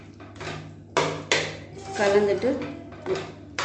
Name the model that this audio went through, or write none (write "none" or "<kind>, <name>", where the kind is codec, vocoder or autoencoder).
none